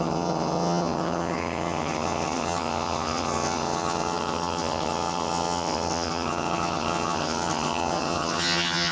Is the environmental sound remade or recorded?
remade